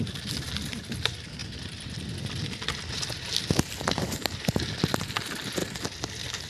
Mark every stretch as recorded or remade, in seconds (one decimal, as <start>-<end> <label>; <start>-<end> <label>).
0.0-1.4 recorded; 1.4-4.6 remade; 4.6-6.5 recorded